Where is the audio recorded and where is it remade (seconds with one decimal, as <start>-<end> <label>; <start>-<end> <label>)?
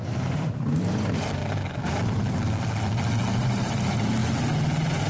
0.0-1.4 remade; 1.4-3.4 recorded; 3.4-4.2 remade; 4.2-5.1 recorded